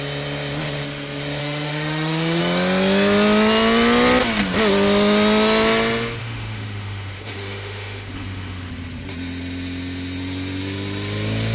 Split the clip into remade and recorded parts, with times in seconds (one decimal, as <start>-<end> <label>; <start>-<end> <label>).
0.0-1.4 recorded; 1.4-2.4 remade; 2.4-6.2 recorded; 6.2-8.7 remade; 8.7-11.5 recorded